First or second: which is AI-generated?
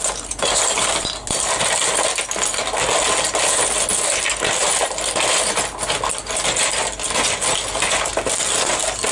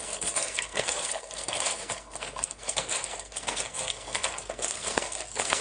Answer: second